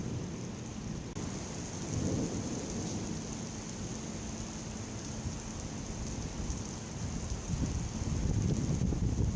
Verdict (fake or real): real